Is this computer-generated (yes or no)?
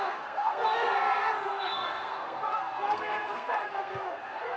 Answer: yes